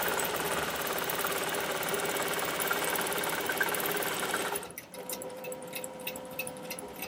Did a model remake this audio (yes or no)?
yes